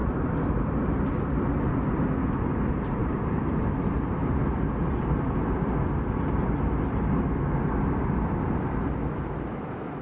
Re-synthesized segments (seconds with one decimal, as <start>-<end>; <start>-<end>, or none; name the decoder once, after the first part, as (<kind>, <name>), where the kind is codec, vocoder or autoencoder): 0.0-0.8 (vocoder, BigVGAN v2); 3.0-3.8